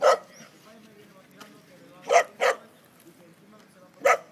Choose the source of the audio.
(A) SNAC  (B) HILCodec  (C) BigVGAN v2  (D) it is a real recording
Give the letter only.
D